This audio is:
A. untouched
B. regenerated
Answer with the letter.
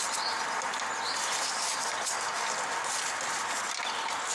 A